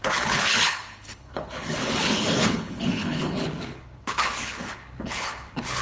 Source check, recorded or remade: remade